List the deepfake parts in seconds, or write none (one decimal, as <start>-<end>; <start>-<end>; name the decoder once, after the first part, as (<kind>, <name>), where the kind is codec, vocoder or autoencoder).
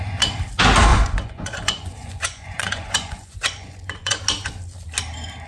0.9-4.2 (vocoder, Vocos)